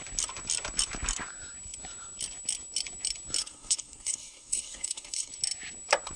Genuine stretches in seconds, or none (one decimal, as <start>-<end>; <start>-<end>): 0.0-3.4; 5.3-6.2